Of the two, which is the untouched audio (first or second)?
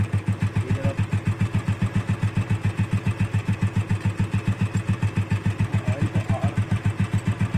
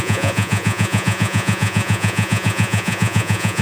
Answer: first